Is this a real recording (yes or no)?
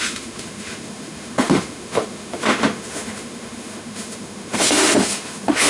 no